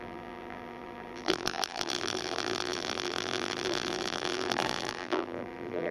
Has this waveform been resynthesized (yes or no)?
yes